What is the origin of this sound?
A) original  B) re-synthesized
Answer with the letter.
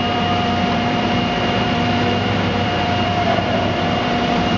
B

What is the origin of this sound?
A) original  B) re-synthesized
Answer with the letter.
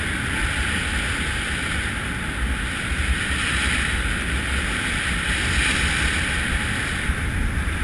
B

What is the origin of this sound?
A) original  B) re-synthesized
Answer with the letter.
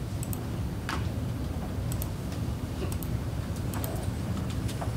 B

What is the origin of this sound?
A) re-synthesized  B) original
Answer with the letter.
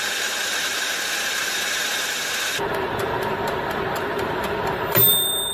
A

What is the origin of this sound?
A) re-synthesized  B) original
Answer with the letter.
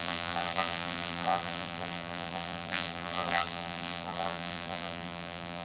A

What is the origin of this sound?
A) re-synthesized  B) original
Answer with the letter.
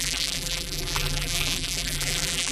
A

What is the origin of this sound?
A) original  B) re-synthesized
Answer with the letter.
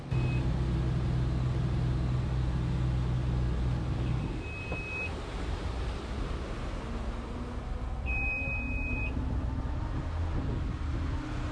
A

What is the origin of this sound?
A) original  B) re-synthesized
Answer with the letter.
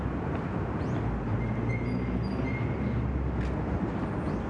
A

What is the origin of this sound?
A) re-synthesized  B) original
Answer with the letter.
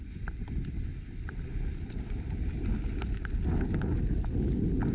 B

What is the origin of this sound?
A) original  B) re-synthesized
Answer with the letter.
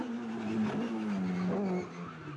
A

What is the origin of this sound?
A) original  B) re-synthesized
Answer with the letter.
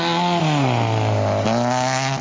A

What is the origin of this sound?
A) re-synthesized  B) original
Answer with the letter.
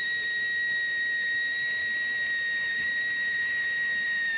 B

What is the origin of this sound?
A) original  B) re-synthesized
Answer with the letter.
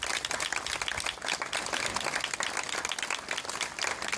A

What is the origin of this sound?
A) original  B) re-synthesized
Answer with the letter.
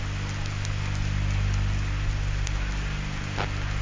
A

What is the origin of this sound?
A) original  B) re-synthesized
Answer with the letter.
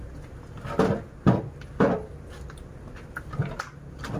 A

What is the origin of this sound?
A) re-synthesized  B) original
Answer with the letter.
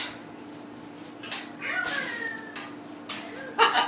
B